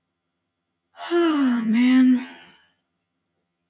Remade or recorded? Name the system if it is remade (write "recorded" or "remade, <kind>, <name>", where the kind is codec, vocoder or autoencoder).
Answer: remade, vocoder, HiFi-GAN